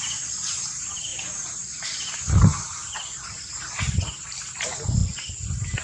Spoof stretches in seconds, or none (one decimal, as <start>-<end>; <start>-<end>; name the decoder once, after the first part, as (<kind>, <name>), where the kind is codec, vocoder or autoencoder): none